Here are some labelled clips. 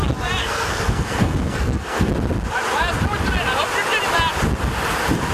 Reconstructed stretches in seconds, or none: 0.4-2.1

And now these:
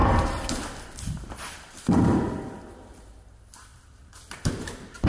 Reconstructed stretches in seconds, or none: 0.0-3.1; 3.7-4.6

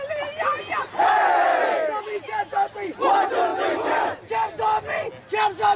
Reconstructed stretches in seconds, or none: none

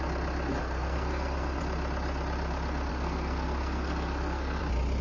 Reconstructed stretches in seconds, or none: 0.6-1.6; 2.9-4.6